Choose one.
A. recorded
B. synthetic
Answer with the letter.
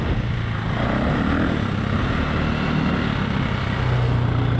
A